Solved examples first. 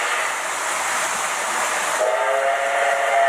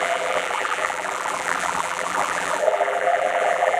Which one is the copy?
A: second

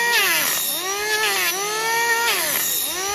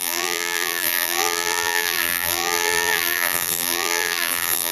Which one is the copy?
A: second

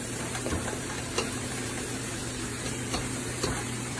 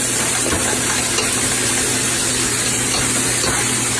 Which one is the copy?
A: first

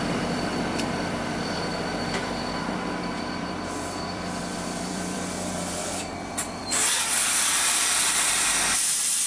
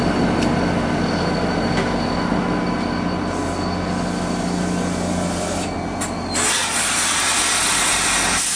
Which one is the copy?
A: first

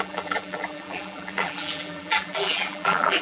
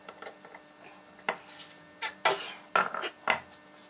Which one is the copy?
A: first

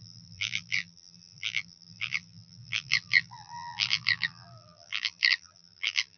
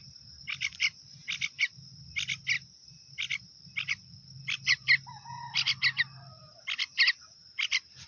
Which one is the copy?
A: first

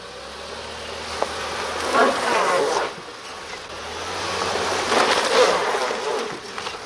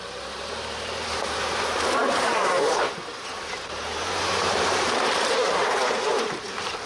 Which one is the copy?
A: second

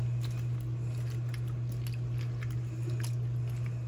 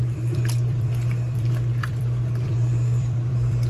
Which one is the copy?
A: second